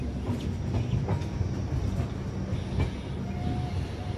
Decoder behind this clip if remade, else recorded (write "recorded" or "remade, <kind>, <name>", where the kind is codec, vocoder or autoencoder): recorded